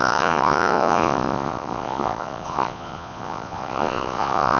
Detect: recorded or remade remade